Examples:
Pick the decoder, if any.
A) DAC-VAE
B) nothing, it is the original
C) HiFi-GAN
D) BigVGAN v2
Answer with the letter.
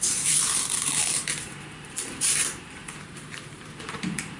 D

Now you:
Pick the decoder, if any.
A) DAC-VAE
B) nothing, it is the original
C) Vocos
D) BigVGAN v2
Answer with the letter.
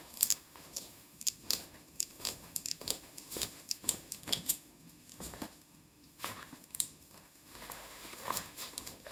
A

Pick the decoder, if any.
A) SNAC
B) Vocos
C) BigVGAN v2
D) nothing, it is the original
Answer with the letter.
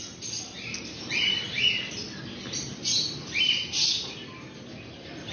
D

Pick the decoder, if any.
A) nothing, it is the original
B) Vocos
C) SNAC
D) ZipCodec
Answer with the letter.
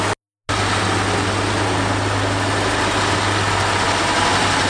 A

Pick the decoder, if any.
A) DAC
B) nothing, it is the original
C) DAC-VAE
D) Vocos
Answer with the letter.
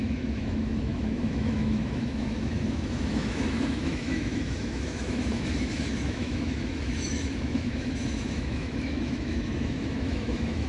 C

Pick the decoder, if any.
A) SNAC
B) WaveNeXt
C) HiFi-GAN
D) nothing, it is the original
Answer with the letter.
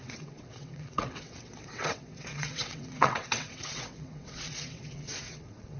B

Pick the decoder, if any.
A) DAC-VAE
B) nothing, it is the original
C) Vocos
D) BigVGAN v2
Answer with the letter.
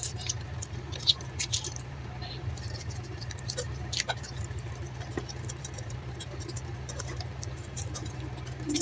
D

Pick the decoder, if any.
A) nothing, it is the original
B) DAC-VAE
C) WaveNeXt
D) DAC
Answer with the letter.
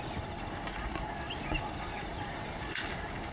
A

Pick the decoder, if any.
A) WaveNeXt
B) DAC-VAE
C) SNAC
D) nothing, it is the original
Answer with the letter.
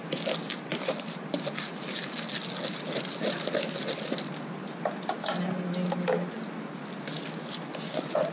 D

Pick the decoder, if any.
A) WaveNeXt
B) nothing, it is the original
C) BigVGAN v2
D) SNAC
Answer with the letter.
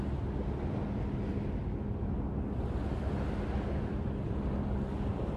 B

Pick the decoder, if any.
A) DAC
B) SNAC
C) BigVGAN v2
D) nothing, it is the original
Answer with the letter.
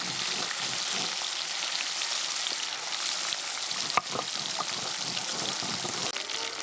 D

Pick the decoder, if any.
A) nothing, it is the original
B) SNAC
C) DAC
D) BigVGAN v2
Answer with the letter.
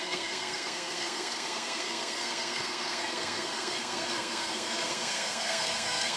B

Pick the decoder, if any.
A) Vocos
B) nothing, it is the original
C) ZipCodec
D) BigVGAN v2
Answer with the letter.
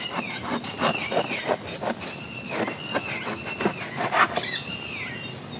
B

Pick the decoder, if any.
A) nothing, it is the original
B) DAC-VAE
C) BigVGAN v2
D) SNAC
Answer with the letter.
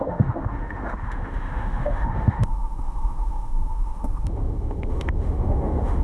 B